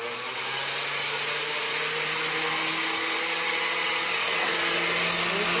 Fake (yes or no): no